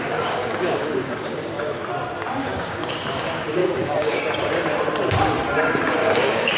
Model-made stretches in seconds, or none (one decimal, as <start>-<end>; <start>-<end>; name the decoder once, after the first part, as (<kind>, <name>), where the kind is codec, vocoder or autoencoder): 0.0-1.8 (codec, DAC); 2.4-2.9; 3.6-4.2; 6.0-6.6

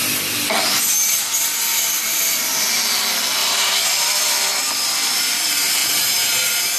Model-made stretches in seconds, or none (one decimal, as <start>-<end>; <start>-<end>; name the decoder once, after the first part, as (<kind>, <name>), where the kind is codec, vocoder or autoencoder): 3.4-5.2 (vocoder, BigVGAN v2)

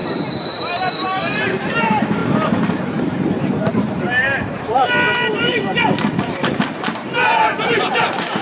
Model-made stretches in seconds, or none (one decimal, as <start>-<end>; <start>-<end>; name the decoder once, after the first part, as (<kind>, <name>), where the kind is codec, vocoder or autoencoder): 0.0-4.8 (vocoder, BigVGAN v2); 5.3-8.4

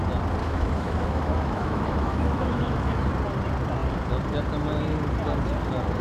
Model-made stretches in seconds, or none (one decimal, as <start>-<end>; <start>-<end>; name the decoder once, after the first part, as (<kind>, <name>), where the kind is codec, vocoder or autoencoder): 0.4-3.1 (autoencoder, DAC-VAE)

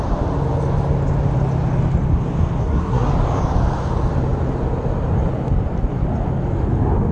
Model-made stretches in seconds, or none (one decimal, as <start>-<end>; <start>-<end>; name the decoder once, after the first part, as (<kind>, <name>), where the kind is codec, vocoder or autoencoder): 2.6-3.1 (codec, SNAC)

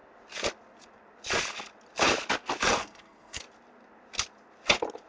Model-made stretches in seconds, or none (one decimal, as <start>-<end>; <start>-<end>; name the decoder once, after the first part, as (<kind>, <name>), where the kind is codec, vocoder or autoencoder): 2.8-3.4 (codec, SNAC)